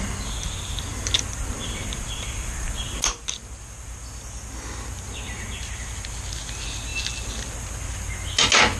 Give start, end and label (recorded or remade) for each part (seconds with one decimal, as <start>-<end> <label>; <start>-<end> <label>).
0.0-8.8 recorded